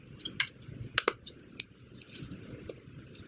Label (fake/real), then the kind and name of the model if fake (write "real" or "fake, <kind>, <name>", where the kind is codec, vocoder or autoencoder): real